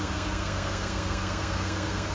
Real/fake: fake